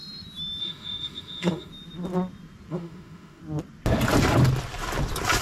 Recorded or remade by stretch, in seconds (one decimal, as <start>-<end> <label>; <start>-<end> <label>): 0.0-0.6 recorded; 0.6-1.7 remade; 1.7-2.7 recorded; 2.7-3.4 remade; 3.4-5.4 recorded